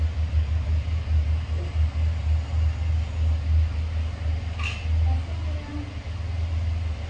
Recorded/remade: recorded